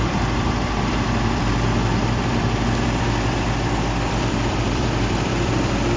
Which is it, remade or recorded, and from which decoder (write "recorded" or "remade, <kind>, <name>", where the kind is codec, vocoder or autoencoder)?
remade, vocoder, BigVGAN v2